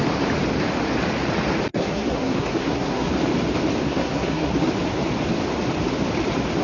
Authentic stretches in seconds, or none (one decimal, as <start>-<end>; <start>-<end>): 0.0-1.7; 3.1-3.8; 4.5-6.6